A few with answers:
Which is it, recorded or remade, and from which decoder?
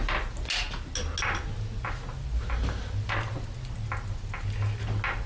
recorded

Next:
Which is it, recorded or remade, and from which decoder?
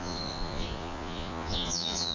remade, vocoder, Vocos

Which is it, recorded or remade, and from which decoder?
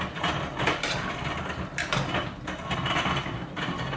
remade, vocoder, BigVGAN v2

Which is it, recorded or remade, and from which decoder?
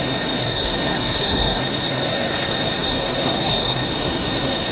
remade, codec, SNAC